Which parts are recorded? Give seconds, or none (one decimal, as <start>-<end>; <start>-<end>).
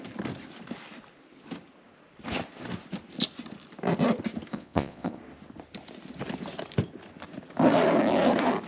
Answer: 0.0-4.5; 5.2-8.7